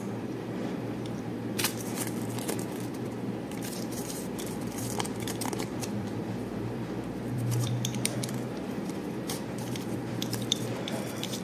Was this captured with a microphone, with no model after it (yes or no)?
no